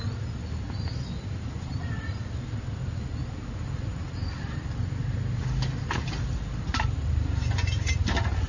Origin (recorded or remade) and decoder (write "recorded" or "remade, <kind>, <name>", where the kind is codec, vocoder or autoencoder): recorded